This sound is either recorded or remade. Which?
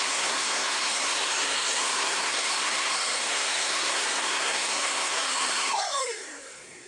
remade